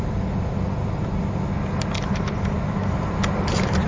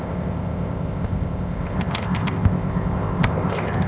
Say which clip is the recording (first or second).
first